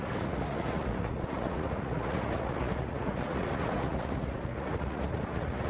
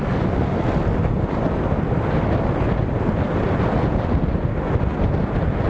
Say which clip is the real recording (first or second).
second